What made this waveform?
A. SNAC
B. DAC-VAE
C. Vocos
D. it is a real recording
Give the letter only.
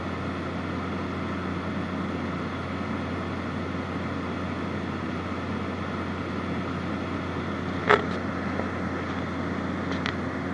D